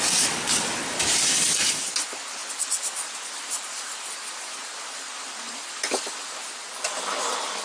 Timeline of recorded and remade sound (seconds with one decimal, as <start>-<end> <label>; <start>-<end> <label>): 0.0-7.6 recorded